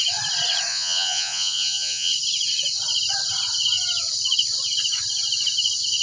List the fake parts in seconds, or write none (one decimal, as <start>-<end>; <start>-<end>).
0.7-2.1